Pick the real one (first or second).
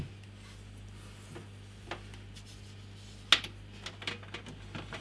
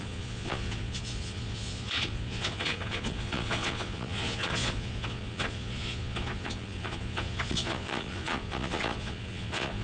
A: first